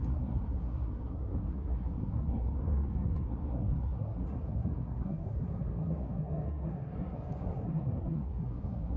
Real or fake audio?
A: fake